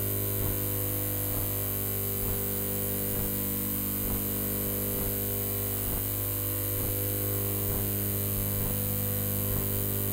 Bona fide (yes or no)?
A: yes